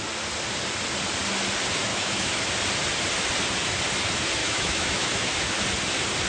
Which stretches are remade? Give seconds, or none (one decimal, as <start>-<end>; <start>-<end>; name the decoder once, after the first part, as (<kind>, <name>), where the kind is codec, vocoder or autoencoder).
1.9-2.5 (autoencoder, DAC-VAE); 4.4-5.3